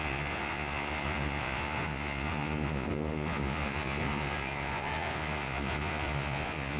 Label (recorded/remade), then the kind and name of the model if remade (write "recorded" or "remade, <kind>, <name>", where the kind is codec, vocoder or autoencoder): remade, vocoder, Vocos